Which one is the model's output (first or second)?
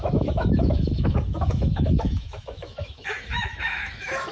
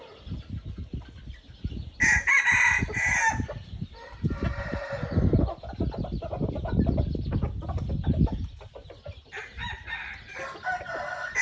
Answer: first